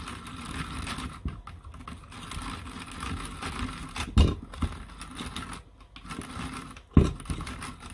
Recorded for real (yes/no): yes